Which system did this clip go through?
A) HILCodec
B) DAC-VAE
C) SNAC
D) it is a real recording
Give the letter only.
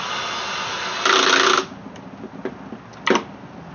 D